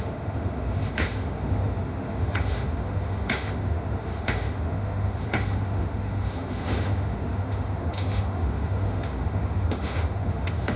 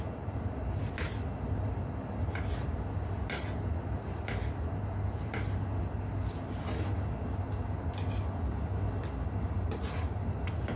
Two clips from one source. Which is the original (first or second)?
second